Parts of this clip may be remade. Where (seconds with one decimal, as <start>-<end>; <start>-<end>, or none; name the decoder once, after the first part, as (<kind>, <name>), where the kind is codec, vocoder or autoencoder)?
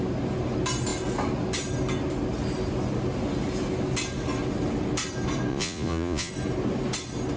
5.5-6.3 (vocoder, Vocos)